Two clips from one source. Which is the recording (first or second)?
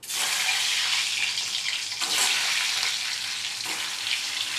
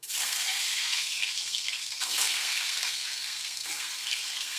first